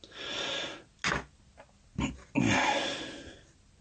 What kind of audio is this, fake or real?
real